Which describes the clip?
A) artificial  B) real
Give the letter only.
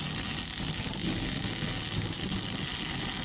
B